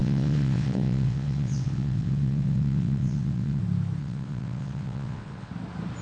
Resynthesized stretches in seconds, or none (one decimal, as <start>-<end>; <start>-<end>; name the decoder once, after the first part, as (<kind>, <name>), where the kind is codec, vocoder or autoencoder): 0.0-3.6 (vocoder, WaveNeXt); 4.0-5.5